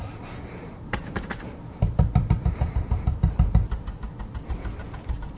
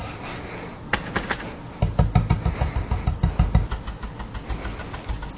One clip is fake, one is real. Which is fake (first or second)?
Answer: first